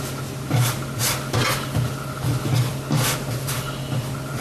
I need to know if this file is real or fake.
real